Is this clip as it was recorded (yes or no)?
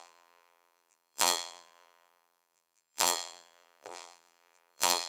no